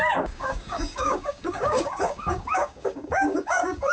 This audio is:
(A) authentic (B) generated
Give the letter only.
B